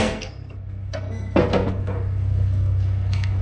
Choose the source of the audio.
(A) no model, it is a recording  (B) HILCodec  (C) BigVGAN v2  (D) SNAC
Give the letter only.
D